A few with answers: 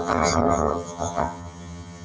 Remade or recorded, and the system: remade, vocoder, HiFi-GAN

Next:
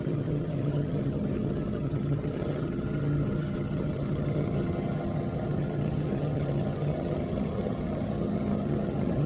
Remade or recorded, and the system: remade, vocoder, HiFi-GAN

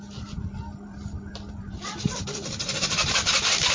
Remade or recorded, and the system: recorded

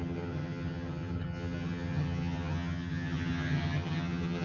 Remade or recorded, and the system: remade, vocoder, HiFi-GAN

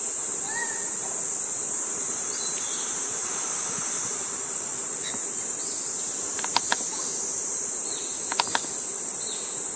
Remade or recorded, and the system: recorded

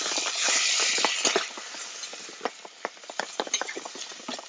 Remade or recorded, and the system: recorded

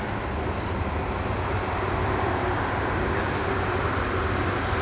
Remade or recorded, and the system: recorded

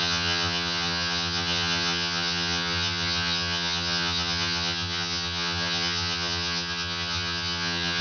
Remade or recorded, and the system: remade, vocoder, HiFi-GAN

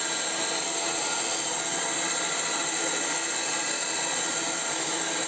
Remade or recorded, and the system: recorded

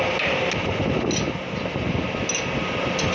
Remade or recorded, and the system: recorded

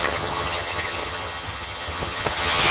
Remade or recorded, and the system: remade, vocoder, HiFi-GAN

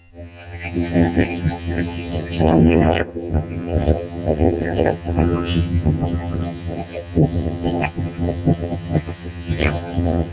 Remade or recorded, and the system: remade, vocoder, HiFi-GAN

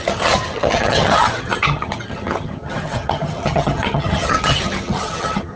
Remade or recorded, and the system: remade, vocoder, HiFi-GAN